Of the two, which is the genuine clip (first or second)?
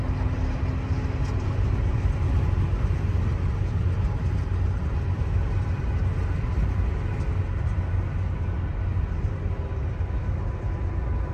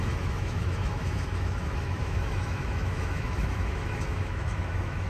first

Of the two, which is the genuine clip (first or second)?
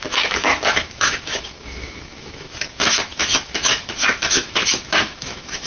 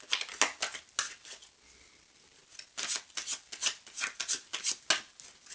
second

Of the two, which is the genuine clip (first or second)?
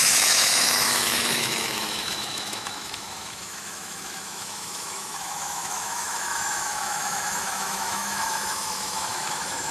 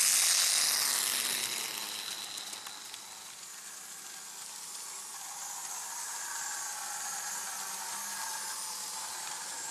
second